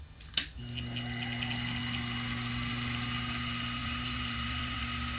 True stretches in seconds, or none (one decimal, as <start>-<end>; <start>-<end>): 0.0-3.8; 4.8-5.2